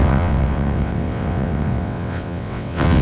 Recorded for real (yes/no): no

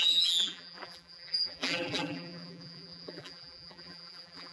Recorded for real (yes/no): no